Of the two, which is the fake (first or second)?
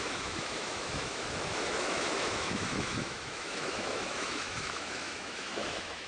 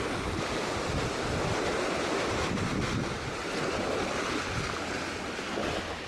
first